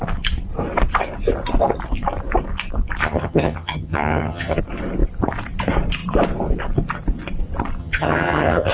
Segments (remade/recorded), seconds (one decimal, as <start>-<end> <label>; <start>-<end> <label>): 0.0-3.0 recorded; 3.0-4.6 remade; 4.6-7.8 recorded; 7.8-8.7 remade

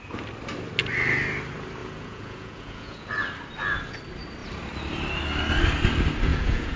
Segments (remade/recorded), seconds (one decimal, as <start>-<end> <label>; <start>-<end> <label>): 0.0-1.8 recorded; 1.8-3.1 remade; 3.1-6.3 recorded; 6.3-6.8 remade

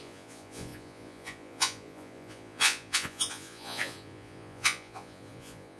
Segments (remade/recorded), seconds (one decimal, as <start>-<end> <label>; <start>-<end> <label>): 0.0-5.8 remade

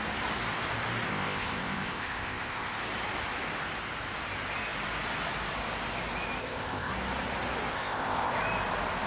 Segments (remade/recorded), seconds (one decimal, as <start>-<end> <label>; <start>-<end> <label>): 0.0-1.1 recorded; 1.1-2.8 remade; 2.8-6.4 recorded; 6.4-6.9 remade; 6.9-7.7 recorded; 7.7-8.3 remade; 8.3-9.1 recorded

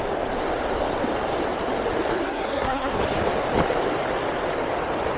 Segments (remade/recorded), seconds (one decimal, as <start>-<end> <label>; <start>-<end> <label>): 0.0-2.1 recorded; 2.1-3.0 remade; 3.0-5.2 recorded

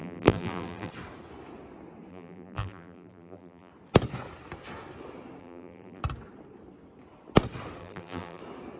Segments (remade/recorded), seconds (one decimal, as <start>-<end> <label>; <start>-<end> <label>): 0.0-0.9 remade; 0.9-2.1 recorded; 2.1-3.7 remade; 3.7-5.4 recorded; 5.4-6.0 remade; 6.0-7.8 recorded; 7.8-8.4 remade; 8.4-8.8 recorded